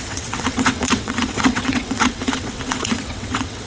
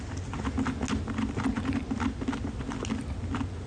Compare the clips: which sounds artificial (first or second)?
first